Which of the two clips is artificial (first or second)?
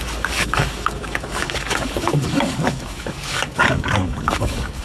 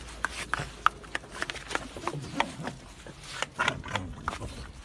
first